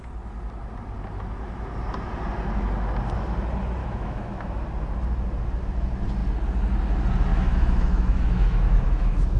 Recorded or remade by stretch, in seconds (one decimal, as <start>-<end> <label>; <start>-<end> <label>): 0.0-3.8 recorded; 3.8-4.6 remade; 4.6-7.3 recorded; 7.3-9.4 remade